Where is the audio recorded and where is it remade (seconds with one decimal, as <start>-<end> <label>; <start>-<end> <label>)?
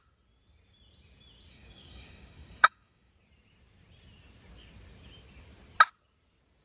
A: 0.0-1.5 recorded; 1.5-3.1 remade; 3.1-6.6 recorded